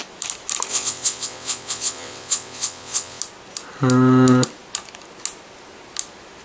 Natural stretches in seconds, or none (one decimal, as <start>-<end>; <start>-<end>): 0.0-0.7; 3.2-6.4